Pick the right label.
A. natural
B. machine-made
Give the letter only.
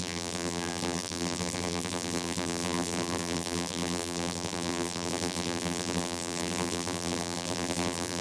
B